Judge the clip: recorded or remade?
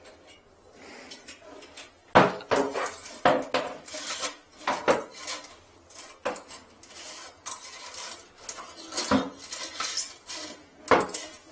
recorded